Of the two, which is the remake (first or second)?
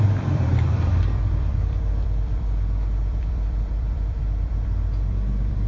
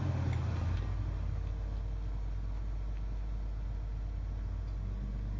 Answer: first